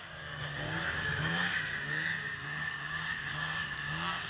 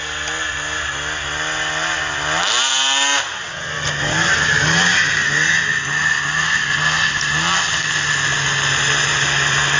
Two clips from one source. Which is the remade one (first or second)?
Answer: first